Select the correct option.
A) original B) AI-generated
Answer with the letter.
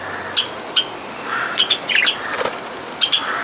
A